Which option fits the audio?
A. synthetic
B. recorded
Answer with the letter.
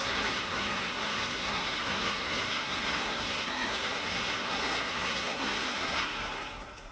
A